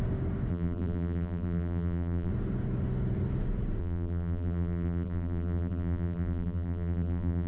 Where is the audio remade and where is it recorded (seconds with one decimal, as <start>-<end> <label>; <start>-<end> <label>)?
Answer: 0.0-0.5 recorded; 0.5-2.3 remade; 2.3-3.8 recorded; 3.8-7.5 remade